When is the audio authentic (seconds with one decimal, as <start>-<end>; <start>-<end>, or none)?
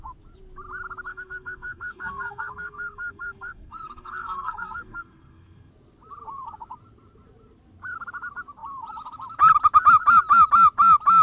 0.0-1.1; 5.7-11.2